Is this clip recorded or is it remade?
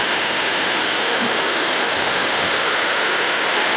remade